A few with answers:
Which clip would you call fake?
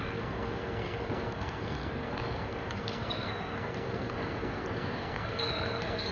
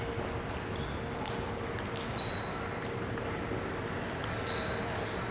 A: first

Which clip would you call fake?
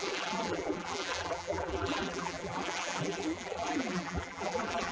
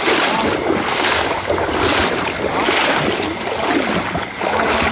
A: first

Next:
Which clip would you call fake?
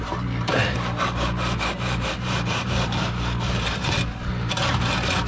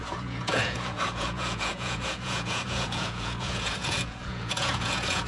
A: second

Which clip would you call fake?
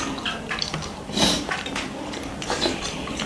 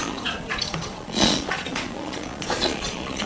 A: second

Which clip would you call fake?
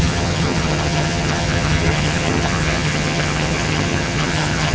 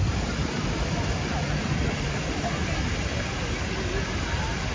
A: first